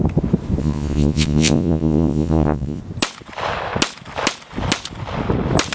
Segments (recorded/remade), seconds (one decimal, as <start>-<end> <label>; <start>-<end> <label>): 0.0-0.6 recorded; 0.6-2.8 remade; 2.8-5.7 recorded